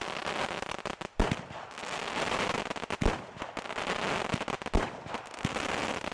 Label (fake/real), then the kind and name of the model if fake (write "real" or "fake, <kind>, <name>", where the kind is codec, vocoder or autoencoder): real